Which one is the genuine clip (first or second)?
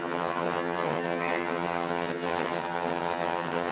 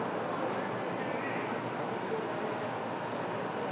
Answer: second